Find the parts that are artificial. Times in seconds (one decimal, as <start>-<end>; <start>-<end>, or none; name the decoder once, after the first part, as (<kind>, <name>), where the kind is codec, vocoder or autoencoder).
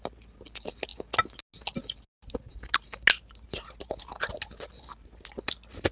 none